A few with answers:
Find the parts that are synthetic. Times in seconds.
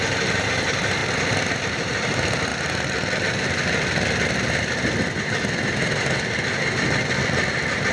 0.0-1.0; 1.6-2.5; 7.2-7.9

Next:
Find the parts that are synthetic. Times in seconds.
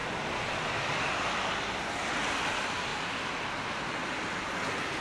none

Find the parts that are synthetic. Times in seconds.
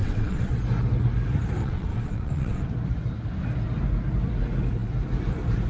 0.0-0.6; 1.6-2.6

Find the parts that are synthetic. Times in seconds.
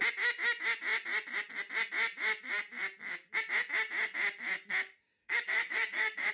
5.2-6.3